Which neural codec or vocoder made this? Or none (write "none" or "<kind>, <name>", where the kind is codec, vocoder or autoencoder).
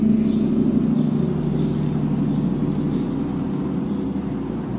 none